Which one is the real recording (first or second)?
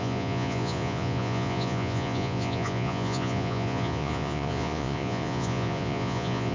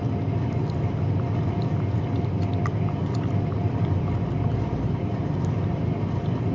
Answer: second